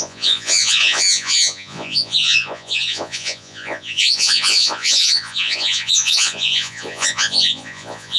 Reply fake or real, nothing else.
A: fake